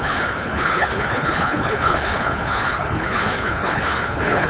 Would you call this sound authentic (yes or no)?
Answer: no